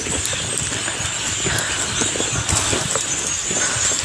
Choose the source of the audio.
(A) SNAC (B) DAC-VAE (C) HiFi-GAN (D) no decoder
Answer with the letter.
D